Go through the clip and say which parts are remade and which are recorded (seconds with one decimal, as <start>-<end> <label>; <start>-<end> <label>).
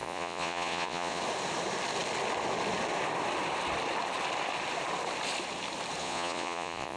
0.0-1.2 remade; 1.2-6.0 recorded; 6.0-7.0 remade